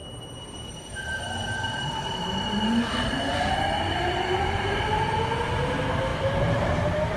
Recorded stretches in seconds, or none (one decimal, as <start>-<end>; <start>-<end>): 4.3-6.1